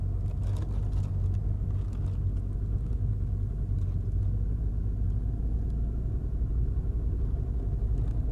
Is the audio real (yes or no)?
yes